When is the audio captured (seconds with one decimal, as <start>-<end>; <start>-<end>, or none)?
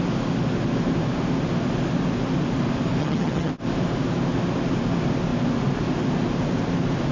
0.0-3.0; 3.5-7.1